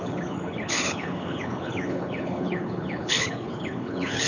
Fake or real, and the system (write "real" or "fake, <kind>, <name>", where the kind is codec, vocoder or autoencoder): fake, codec, HILCodec